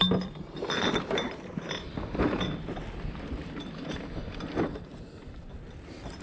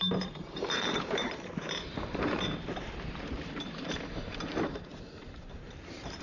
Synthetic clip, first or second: second